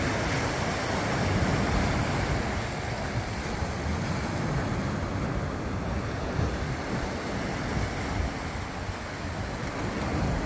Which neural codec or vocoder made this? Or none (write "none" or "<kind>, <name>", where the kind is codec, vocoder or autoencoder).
none